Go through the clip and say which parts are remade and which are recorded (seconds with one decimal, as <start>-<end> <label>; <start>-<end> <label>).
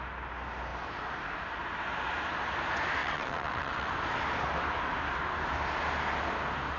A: 0.0-3.0 recorded; 3.0-3.9 remade; 3.9-6.8 recorded